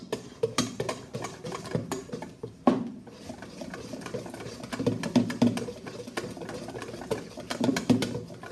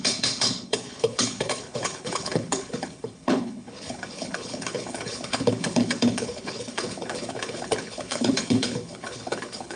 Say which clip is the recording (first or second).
first